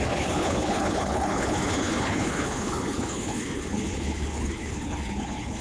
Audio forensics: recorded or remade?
remade